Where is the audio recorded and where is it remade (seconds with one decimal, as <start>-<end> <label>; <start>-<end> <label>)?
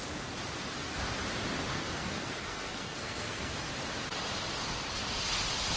0.0-1.7 recorded; 1.7-3.7 remade; 3.7-5.8 recorded